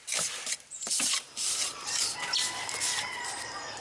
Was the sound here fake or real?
real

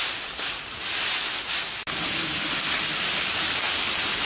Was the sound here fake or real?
real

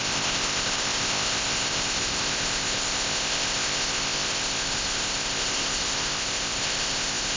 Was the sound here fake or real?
fake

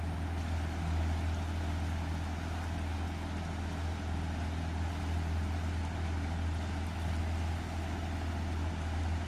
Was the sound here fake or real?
real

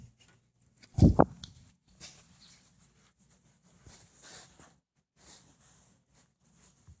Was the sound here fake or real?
real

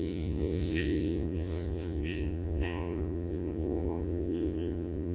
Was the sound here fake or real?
fake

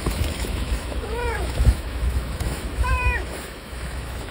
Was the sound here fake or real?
fake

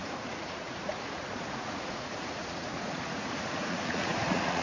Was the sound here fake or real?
fake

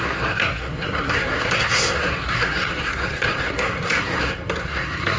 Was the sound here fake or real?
fake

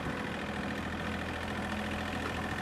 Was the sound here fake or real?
real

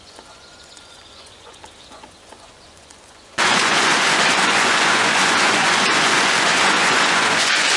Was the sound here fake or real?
fake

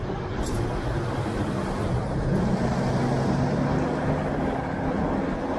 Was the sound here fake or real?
real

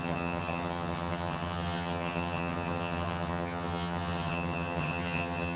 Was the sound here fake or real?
fake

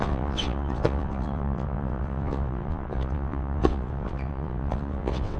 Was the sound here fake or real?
fake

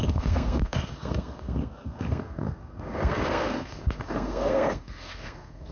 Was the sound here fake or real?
fake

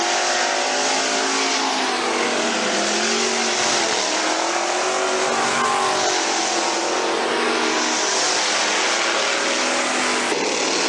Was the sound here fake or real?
real